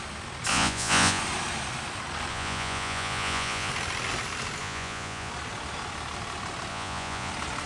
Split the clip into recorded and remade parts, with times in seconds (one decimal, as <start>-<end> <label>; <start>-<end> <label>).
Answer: 0.0-0.5 recorded; 0.5-1.2 remade; 1.2-2.3 recorded; 2.3-3.7 remade; 3.7-4.6 recorded; 4.6-5.3 remade; 5.3-6.7 recorded; 6.7-7.3 remade; 7.3-7.7 recorded